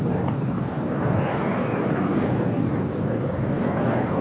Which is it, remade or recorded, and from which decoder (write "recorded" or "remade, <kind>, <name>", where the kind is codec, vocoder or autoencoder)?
remade, codec, DAC